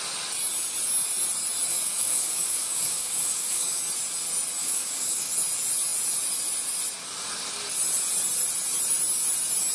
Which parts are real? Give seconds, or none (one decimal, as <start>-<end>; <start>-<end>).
0.0-1.7; 3.8-4.6; 5.3-9.7